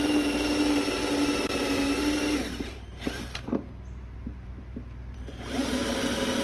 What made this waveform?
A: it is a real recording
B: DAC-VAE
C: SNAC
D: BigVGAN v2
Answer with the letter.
D